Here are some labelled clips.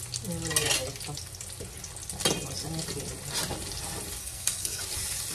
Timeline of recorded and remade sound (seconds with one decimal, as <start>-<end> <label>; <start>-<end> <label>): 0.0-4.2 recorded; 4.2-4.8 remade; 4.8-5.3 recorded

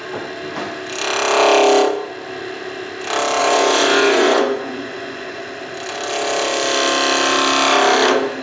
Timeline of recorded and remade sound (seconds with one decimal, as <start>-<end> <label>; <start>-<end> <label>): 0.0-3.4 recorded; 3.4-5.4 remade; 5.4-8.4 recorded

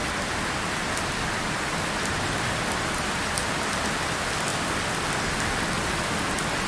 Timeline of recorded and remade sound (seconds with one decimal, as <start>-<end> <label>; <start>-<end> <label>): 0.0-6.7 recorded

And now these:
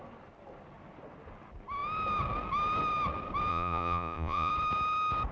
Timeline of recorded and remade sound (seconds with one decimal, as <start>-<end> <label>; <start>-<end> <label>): 0.0-3.5 recorded; 3.5-4.5 remade; 4.5-5.3 recorded